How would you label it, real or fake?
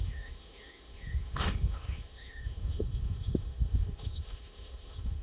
fake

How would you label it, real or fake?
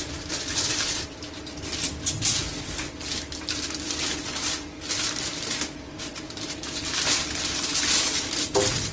real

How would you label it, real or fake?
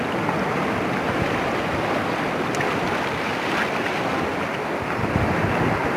real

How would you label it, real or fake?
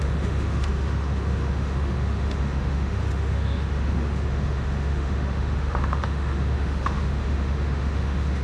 fake